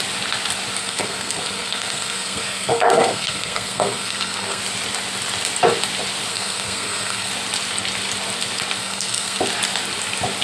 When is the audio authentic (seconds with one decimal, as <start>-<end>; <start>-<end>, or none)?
0.0-0.8; 4.6-6.3; 7.3-8.8; 9.4-10.4